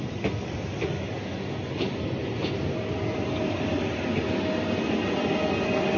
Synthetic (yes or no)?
no